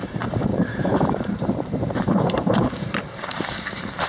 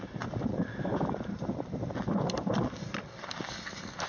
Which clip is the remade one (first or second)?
first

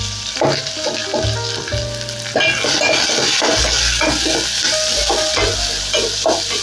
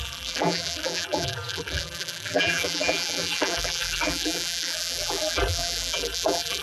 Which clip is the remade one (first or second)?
second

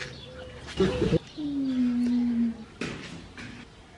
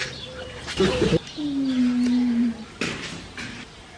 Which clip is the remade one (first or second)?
second